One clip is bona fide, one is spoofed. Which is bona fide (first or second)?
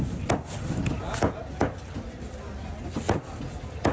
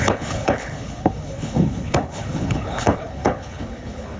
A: first